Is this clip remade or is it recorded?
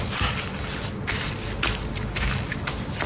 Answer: recorded